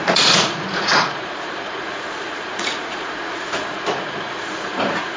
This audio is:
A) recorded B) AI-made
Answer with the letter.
B